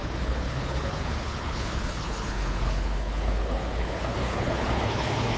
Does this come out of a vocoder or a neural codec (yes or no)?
yes